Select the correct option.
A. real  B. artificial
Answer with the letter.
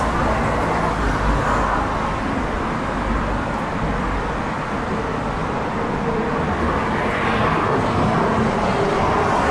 A